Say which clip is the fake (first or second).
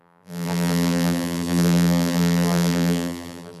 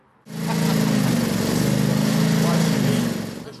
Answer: first